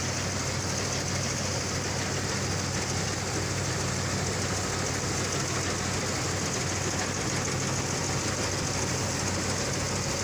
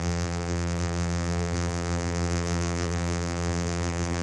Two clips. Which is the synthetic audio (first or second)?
second